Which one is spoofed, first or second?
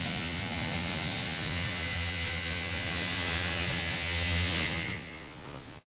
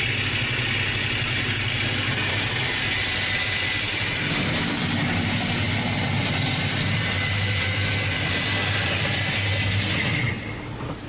first